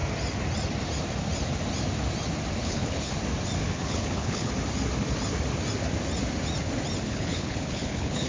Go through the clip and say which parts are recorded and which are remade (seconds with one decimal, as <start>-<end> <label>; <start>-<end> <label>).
0.0-2.6 recorded; 2.6-3.1 remade; 3.1-3.6 recorded; 3.6-4.5 remade; 4.5-7.1 recorded; 7.1-8.3 remade